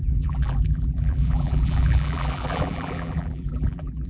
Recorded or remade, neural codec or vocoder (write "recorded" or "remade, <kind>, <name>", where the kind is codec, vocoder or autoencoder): remade, vocoder, BigVGAN v2